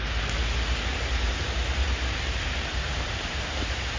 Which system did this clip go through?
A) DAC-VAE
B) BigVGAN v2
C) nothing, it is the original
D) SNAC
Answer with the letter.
C